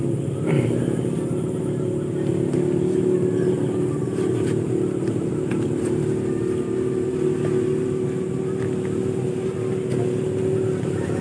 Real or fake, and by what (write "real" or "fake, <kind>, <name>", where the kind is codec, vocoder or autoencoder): real